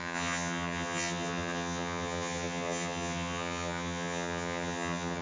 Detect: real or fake fake